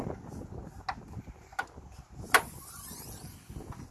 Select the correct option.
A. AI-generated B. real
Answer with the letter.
B